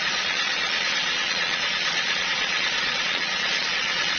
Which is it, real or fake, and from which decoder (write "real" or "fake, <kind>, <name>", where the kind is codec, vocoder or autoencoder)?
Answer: fake, vocoder, Vocos